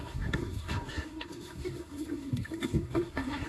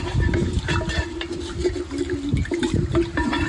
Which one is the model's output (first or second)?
first